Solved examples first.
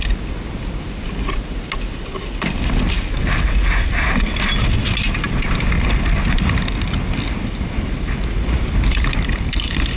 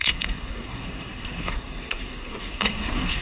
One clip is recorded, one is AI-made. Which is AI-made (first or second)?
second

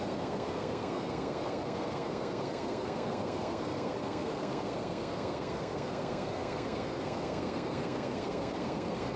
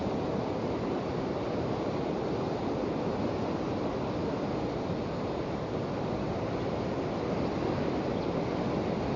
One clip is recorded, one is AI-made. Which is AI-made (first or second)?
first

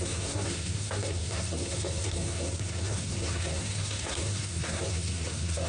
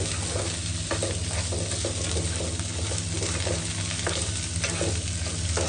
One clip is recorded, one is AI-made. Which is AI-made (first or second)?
first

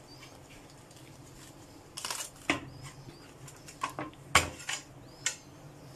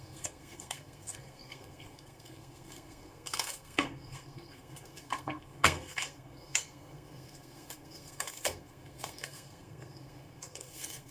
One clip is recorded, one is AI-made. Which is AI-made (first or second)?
second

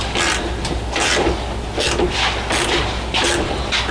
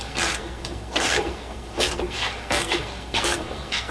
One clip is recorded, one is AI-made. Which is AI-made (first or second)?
second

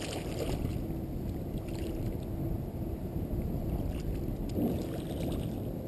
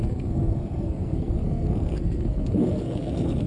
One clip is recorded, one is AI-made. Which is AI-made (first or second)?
second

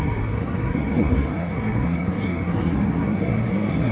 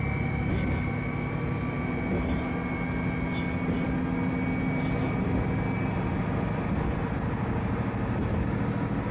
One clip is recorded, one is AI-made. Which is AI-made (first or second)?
first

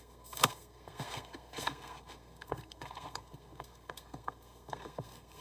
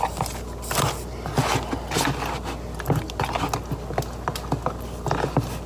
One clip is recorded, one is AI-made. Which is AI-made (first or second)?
first